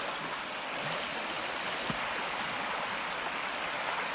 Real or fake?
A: real